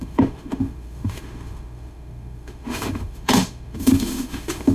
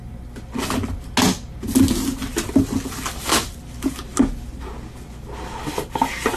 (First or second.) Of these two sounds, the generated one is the first